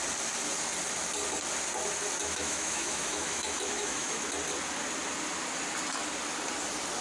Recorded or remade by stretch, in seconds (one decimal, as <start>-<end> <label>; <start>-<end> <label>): 0.0-2.2 recorded; 2.2-4.2 remade; 4.2-7.0 recorded